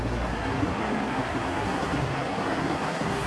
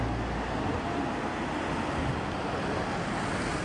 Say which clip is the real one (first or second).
second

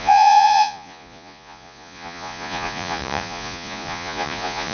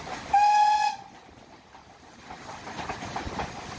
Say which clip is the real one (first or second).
second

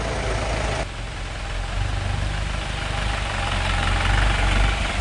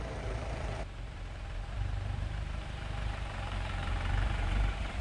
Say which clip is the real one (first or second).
first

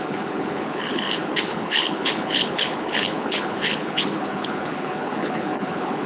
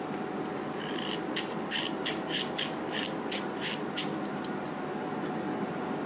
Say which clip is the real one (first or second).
second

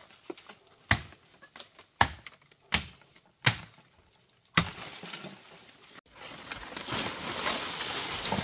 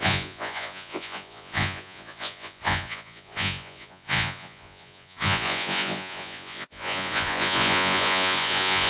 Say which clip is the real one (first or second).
first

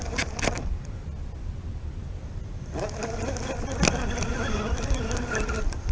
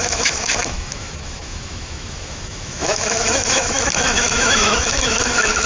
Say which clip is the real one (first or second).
first